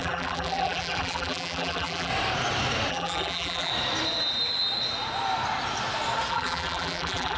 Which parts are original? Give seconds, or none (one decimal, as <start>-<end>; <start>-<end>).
2.1-2.9; 3.7-6.3